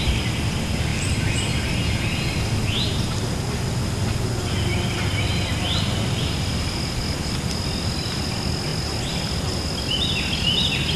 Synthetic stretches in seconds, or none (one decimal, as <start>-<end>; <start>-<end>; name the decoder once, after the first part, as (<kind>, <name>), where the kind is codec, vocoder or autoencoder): none